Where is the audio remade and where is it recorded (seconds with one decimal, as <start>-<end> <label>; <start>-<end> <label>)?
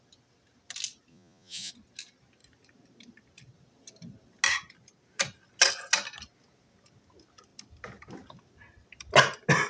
0.0-1.1 recorded; 1.1-1.7 remade; 1.7-9.7 recorded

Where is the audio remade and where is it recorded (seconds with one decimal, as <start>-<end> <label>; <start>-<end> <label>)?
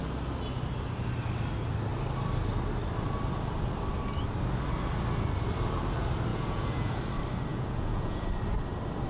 0.0-6.3 recorded; 6.3-7.0 remade; 7.0-7.5 recorded; 7.5-8.3 remade; 8.3-9.1 recorded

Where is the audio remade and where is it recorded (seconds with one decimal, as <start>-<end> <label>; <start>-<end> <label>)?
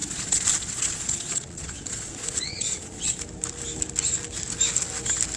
0.0-3.2 remade; 3.2-5.4 recorded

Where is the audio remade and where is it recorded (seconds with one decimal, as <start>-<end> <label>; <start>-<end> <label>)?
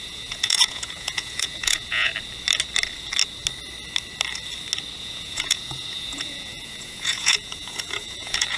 0.0-2.1 remade; 2.1-5.0 recorded; 5.0-8.6 remade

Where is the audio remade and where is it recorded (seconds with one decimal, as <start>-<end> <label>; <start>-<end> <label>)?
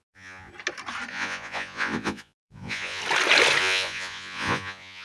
0.0-0.5 remade; 0.5-1.1 recorded; 1.1-3.0 remade; 3.0-3.6 recorded; 3.6-5.0 remade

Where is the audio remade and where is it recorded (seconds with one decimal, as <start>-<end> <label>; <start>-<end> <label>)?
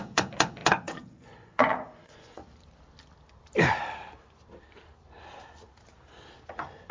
0.0-2.4 remade; 2.4-6.5 recorded; 6.5-6.9 remade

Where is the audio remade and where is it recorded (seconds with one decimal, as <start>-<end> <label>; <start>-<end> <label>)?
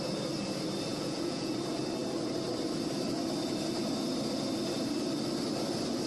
0.0-0.9 recorded; 0.9-1.5 remade; 1.5-6.1 recorded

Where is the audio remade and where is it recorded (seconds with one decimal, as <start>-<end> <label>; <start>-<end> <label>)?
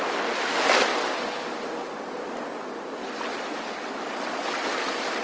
0.0-5.2 recorded